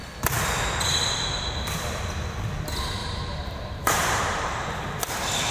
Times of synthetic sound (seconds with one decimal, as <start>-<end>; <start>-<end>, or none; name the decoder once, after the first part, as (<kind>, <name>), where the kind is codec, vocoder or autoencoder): 3.0-5.1 (vocoder, BigVGAN v2)